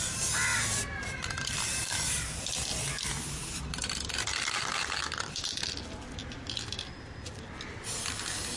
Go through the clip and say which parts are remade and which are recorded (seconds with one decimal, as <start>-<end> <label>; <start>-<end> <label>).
0.0-0.5 recorded; 0.5-2.9 remade; 2.9-8.6 recorded